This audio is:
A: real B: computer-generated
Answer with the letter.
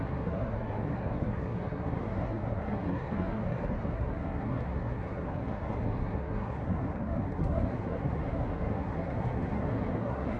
B